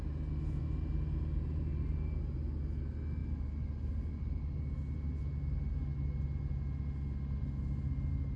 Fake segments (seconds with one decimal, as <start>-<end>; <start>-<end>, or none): none